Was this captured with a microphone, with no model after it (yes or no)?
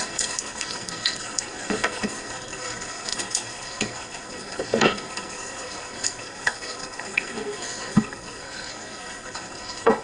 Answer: no